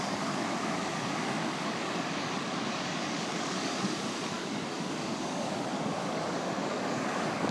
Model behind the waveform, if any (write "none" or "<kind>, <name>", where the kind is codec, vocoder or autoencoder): codec, DAC